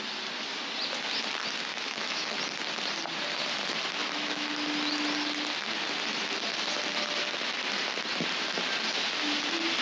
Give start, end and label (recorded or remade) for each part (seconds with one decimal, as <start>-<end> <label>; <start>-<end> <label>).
0.0-1.7 recorded; 1.7-2.3 remade; 2.3-4.0 recorded; 4.0-4.5 remade; 4.5-9.8 recorded